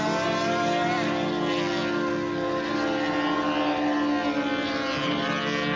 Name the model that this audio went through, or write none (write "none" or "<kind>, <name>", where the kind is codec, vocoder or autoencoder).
none